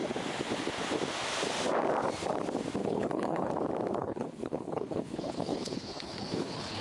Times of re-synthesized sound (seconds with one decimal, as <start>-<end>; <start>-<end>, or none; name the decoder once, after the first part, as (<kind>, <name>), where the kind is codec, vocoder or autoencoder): 2.8-3.5 (codec, HILCodec); 4.0-6.8